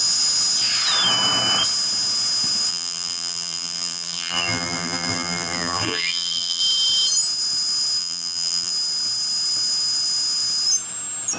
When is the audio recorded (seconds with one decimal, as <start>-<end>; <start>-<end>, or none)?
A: 0.0-2.7; 6.6-8.0; 8.7-11.4